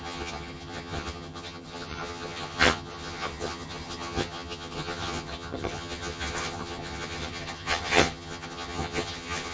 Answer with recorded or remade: remade